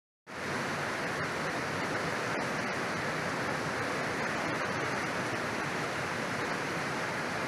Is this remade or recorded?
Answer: recorded